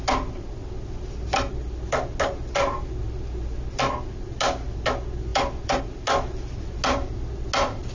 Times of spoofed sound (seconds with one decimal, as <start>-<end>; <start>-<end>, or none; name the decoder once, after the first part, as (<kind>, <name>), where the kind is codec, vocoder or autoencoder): 5.3-5.8 (vocoder, BigVGAN v2)